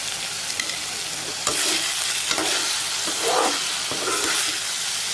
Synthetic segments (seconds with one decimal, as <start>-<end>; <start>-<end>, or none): none